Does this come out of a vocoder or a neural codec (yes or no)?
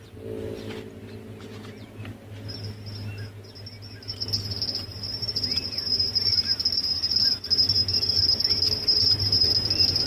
no